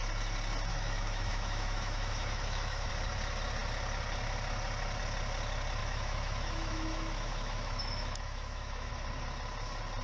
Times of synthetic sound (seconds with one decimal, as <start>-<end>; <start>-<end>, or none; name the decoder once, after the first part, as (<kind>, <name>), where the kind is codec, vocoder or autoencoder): 0.7-2.9 (autoencoder, DAC-VAE); 5.8-8.9